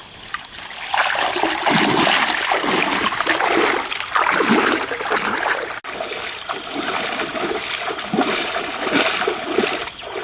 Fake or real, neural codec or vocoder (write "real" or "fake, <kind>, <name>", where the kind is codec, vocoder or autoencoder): real